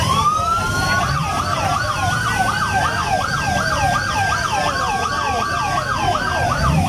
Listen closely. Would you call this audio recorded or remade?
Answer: recorded